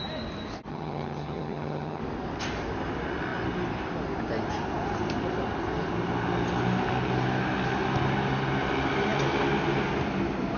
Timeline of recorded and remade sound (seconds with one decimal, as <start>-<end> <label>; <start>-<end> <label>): 0.0-0.7 recorded; 0.7-2.0 remade; 2.0-10.6 recorded